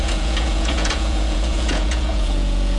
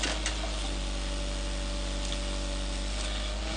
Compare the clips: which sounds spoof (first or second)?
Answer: first